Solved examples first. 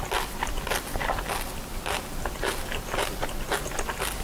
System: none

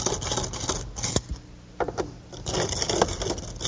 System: none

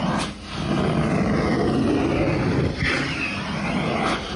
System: none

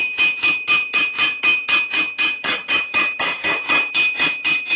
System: vocoder, HiFi-GAN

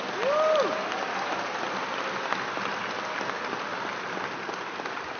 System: none